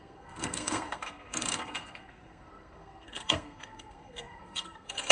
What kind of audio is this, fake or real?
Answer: fake